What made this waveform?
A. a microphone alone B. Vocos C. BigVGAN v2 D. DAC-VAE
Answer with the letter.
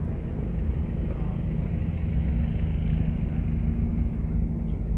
A